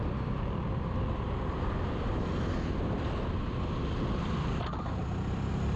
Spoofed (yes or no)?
no